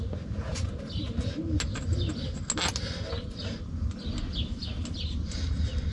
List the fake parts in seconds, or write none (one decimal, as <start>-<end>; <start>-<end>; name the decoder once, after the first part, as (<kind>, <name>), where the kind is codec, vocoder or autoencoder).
none